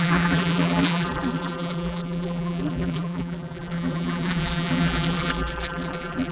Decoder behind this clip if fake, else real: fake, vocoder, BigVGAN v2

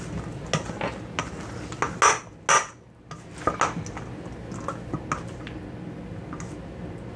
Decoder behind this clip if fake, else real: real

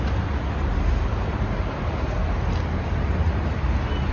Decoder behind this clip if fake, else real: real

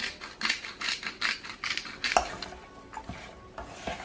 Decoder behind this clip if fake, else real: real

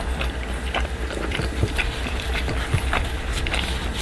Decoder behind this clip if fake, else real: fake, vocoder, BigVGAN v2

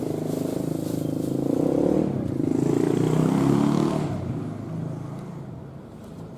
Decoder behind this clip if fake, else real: real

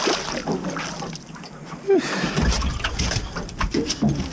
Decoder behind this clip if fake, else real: real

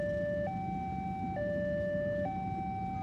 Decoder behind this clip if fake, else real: real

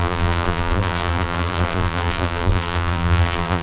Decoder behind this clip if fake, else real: fake, vocoder, BigVGAN v2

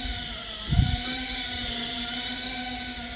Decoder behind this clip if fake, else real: fake, vocoder, BigVGAN v2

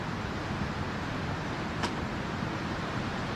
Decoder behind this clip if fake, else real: fake, vocoder, BigVGAN v2